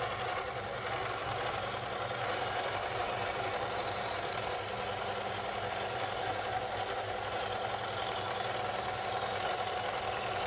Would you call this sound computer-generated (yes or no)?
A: no